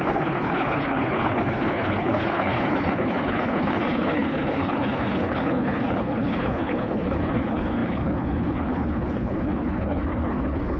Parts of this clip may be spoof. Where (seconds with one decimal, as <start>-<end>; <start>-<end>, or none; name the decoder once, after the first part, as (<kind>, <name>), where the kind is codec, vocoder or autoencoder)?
0.0-10.8 (codec, HILCodec)